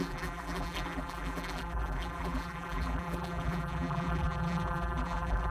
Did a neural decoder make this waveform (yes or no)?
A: yes